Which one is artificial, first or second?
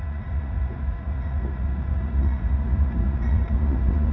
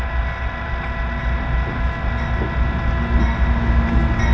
first